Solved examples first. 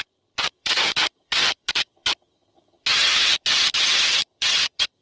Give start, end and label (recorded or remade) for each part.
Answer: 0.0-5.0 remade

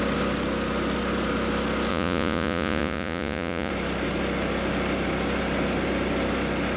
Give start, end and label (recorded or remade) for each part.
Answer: 0.0-1.9 recorded; 1.9-3.7 remade; 3.7-6.8 recorded

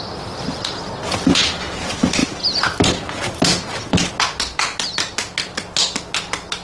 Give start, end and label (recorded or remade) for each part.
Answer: 0.0-6.6 recorded

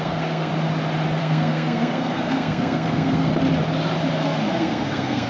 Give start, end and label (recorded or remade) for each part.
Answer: 0.0-0.5 remade; 0.5-1.2 recorded; 1.2-3.3 remade; 3.3-4.5 recorded; 4.5-5.3 remade

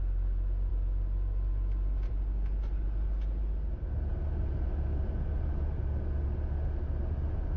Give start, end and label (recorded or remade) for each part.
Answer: 0.0-7.6 recorded

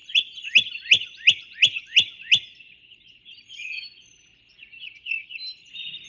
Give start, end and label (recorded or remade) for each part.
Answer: 0.0-4.1 remade; 4.1-6.1 recorded

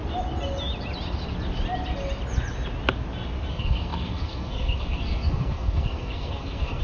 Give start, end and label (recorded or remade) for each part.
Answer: 0.0-3.5 recorded; 3.5-6.8 remade